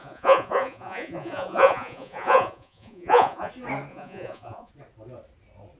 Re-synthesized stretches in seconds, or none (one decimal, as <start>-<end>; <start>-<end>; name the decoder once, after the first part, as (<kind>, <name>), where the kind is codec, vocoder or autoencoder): 0.0-3.5 (vocoder, Vocos); 3.9-4.7